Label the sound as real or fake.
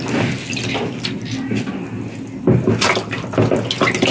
real